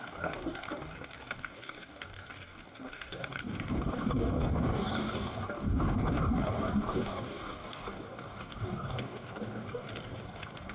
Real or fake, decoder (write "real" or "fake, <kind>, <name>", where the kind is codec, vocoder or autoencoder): fake, codec, DAC